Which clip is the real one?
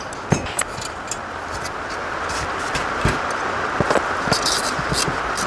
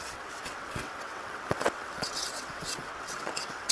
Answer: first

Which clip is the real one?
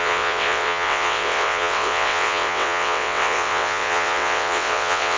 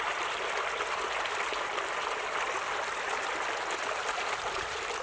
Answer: second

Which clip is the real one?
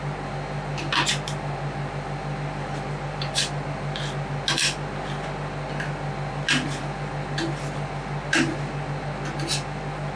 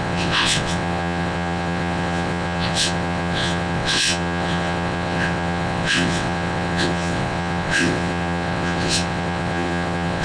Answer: first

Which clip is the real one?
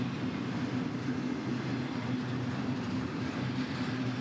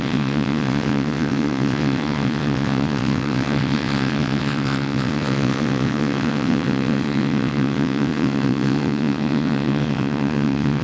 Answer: first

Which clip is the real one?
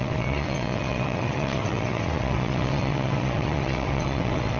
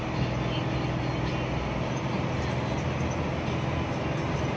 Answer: second